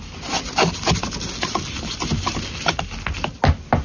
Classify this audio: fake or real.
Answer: real